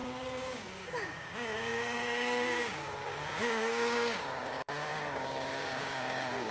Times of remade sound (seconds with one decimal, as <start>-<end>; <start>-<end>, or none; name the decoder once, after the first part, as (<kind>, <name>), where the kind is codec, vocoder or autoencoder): 0.0-6.5 (codec, DAC)